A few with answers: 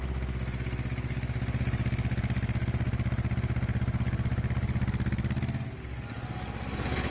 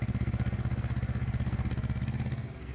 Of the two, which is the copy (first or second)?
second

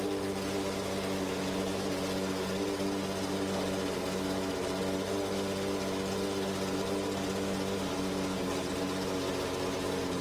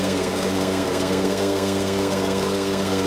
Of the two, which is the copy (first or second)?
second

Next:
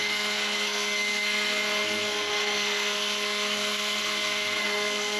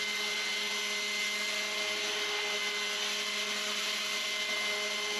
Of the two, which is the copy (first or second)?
first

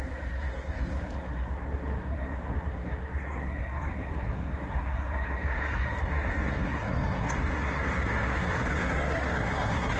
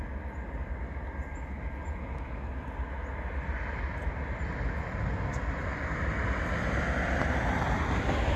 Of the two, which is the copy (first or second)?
first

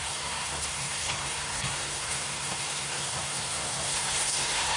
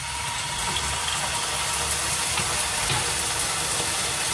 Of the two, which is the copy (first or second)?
first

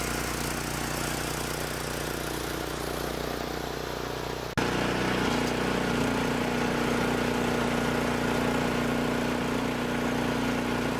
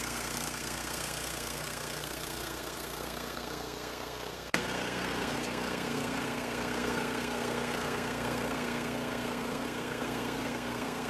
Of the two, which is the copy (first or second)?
second